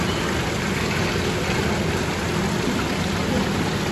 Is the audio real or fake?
real